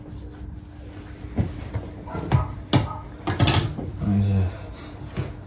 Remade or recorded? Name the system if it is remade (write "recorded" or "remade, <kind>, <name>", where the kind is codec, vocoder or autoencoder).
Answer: recorded